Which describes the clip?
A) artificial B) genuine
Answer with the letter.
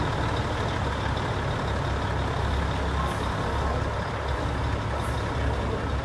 B